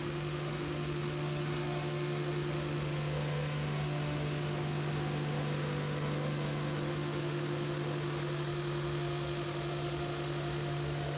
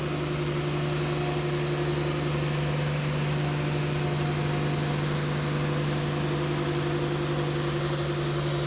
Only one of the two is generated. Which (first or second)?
first